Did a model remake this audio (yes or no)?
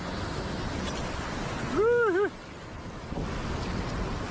no